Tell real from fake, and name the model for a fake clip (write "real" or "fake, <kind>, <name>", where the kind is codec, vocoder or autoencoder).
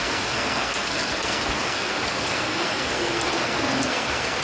fake, codec, SNAC